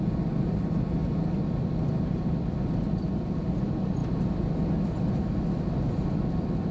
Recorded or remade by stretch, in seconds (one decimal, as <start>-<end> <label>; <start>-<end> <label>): 0.0-6.7 recorded